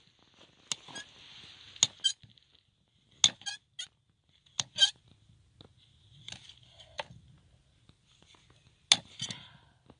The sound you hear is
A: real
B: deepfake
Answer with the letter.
A